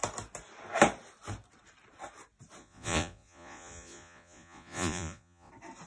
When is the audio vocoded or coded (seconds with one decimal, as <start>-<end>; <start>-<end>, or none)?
2.6-5.5